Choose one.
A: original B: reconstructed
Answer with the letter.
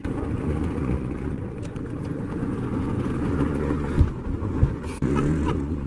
B